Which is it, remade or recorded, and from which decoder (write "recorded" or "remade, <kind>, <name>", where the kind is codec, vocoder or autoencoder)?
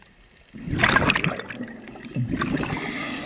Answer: recorded